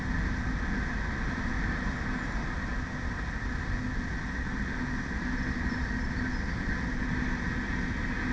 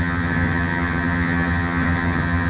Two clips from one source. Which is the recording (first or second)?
first